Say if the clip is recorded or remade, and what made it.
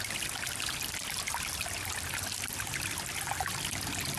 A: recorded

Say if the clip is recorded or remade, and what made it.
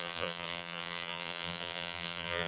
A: remade, vocoder, BigVGAN v2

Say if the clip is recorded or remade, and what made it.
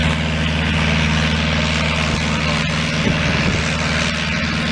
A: recorded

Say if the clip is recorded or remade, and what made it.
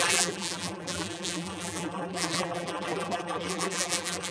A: remade, vocoder, BigVGAN v2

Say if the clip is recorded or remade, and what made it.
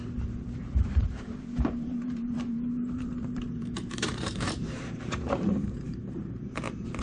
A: remade, vocoder, BigVGAN v2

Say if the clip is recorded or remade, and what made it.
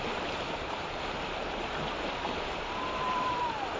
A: remade, vocoder, BigVGAN v2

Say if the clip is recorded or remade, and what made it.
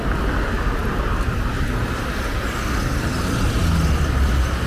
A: recorded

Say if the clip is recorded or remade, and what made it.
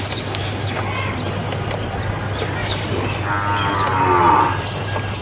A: remade, vocoder, BigVGAN v2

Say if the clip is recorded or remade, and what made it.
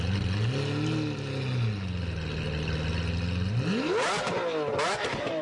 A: recorded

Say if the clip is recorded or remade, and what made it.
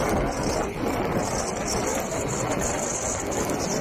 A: recorded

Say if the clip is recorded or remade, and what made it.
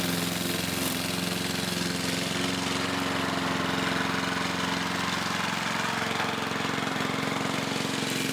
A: recorded